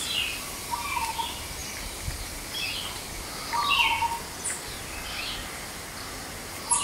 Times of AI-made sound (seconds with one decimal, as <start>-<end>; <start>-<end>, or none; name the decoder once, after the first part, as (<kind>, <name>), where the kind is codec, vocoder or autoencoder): none